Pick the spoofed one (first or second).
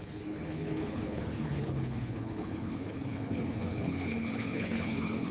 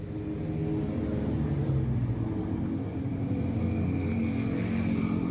first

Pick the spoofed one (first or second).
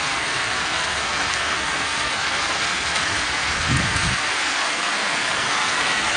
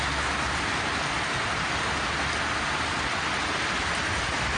first